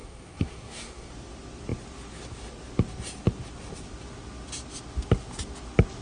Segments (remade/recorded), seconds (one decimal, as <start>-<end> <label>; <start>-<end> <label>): 0.0-1.1 remade; 1.1-6.0 recorded